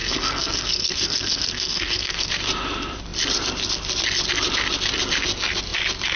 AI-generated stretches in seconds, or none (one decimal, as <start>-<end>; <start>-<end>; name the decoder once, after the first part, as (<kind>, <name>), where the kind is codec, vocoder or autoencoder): 0.0-2.3 (codec, SNAC)